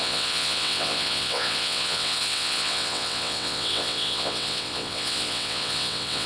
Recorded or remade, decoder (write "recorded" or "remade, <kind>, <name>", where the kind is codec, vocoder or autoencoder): remade, vocoder, WaveNeXt